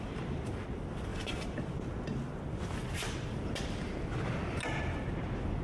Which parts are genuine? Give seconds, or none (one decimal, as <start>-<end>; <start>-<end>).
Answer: 0.0-1.1; 1.7-5.6